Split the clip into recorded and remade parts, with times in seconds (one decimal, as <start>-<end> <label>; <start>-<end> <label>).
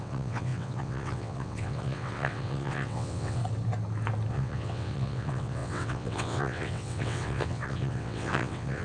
0.0-3.4 remade; 3.4-4.3 recorded; 4.3-8.8 remade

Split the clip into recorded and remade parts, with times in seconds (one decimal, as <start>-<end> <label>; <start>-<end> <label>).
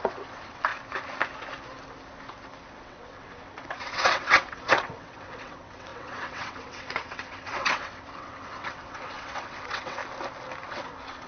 0.0-0.7 remade; 0.7-2.7 recorded; 2.7-10.0 remade; 10.0-10.7 recorded; 10.7-11.3 remade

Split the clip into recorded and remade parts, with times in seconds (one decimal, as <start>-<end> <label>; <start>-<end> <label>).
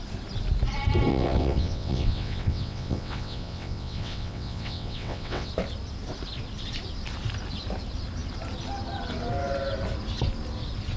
0.0-1.1 recorded; 1.1-5.5 remade; 5.5-11.0 recorded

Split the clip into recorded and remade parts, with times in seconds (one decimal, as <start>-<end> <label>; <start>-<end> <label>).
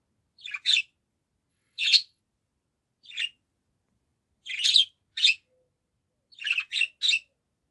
0.0-1.5 recorded; 1.5-2.2 remade; 2.2-7.7 recorded